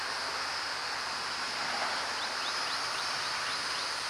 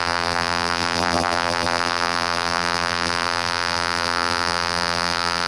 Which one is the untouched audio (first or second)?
first